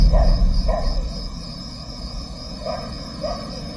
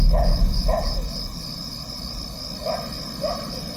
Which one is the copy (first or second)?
first